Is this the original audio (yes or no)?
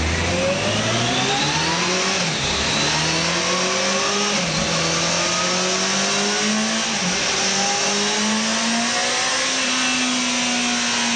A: yes